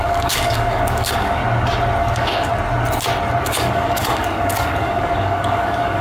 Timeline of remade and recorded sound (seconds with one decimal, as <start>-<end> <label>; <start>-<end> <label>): 0.0-1.4 remade; 1.4-2.0 recorded; 2.0-2.5 remade; 2.5-3.4 recorded; 3.4-6.0 remade